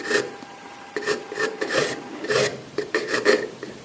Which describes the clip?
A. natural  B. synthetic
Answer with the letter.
B